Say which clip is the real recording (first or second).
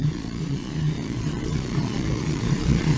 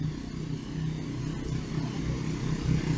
second